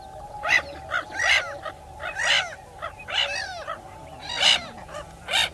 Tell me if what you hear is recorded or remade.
recorded